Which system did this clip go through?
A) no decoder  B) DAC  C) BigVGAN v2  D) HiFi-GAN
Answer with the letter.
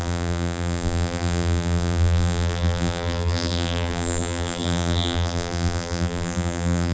C